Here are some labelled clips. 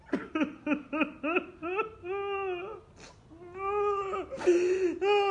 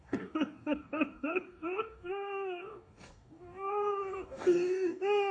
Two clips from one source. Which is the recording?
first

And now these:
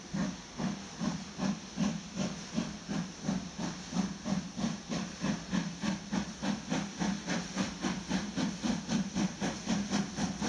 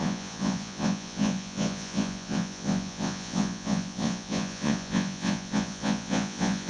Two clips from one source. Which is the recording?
first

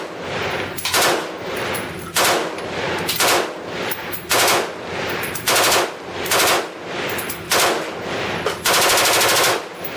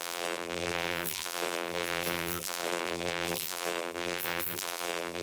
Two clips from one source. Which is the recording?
first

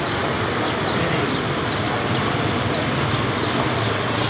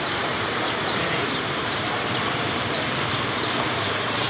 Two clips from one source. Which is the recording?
first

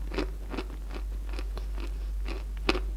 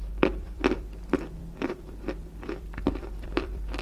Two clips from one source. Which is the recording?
first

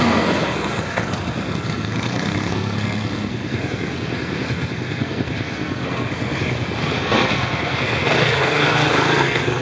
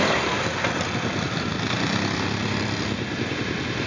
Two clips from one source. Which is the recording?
second